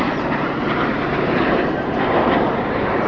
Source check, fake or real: real